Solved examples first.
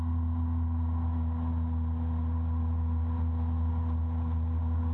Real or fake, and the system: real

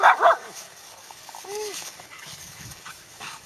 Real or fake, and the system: fake, codec, DAC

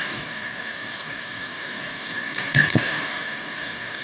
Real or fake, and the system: fake, codec, DAC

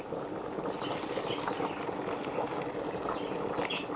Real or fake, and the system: real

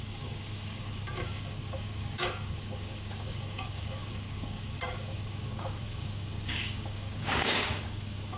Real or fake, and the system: fake, codec, DAC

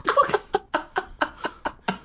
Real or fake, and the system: real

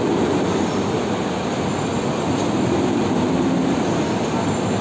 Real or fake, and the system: real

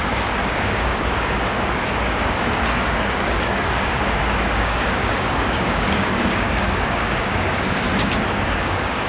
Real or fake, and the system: fake, codec, DAC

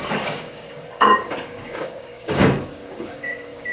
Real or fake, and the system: fake, codec, DAC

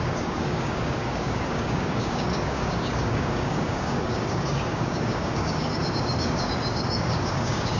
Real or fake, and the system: fake, codec, DAC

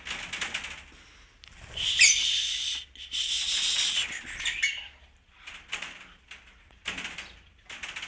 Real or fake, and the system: real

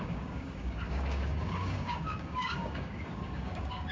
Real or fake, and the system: fake, codec, DAC